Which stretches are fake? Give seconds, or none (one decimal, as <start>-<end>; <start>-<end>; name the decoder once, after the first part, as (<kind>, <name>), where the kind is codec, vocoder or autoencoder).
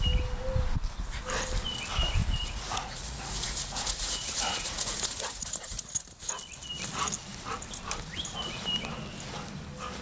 2.2-6.3 (vocoder, Vocos)